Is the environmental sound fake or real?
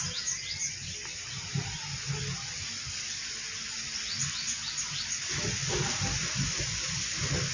real